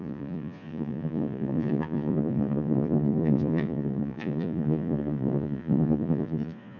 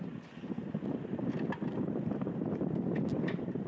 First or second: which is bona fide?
second